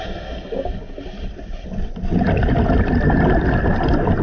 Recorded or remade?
recorded